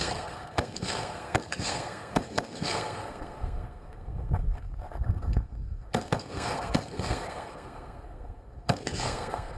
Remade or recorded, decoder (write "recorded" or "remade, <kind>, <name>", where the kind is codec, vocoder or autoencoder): remade, codec, SNAC